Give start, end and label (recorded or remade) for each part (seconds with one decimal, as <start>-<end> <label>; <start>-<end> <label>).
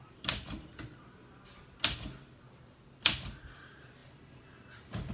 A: 0.0-5.1 recorded